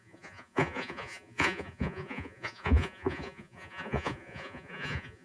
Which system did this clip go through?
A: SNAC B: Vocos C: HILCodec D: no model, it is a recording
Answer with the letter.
B